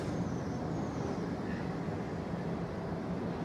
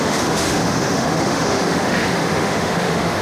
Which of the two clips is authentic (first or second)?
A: first